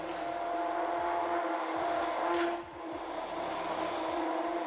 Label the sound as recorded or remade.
recorded